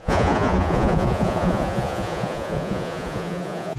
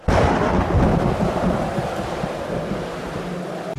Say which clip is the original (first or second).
second